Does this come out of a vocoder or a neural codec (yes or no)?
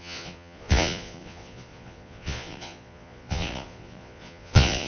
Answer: yes